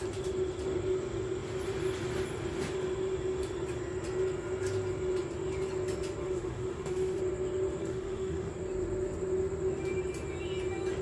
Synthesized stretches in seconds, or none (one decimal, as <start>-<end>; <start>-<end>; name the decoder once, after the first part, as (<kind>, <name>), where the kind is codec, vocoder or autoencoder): 6.2-7.2 (autoencoder, DAC-VAE); 7.8-8.5